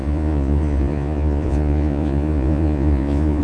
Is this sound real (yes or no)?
no